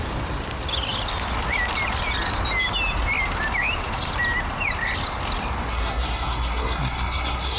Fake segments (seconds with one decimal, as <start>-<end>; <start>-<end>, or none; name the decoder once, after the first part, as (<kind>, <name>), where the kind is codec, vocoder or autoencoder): 5.7-7.6 (codec, SNAC)